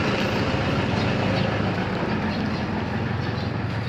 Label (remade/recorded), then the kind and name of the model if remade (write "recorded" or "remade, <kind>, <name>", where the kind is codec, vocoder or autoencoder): recorded